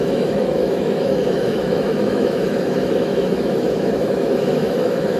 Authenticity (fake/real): fake